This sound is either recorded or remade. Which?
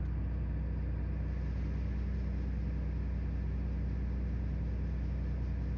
recorded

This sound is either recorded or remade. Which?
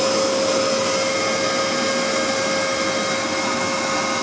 recorded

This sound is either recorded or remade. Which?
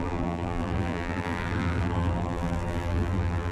remade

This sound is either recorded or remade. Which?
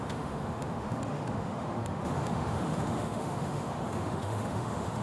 remade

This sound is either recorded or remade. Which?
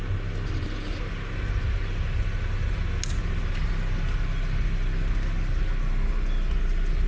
recorded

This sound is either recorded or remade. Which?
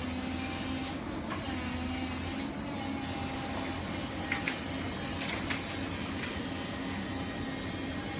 recorded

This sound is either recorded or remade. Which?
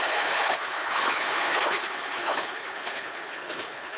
remade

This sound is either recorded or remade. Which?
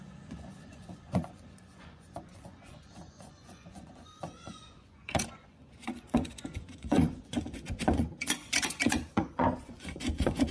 remade